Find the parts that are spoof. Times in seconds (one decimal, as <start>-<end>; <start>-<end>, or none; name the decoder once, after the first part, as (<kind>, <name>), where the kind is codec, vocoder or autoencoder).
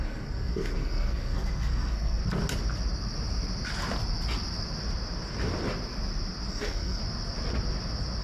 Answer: 0.0-2.2 (codec, SNAC); 6.5-7.0